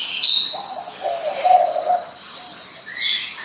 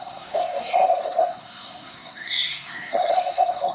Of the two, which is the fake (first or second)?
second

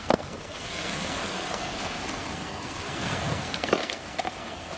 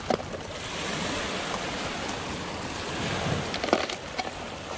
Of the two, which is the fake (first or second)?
first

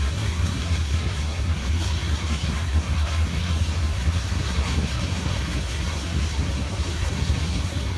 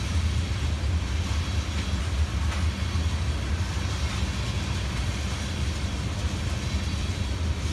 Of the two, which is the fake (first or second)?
first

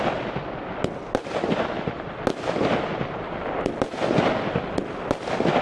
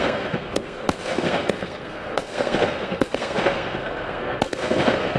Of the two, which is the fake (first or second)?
second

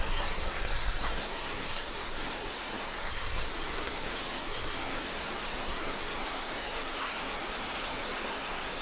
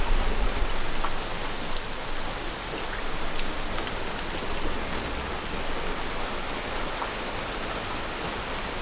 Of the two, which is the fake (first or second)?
first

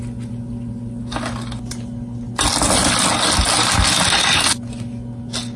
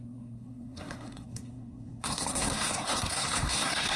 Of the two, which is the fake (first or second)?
second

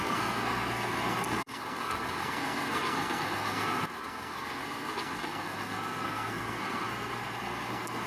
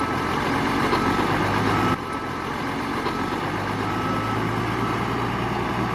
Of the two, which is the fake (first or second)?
first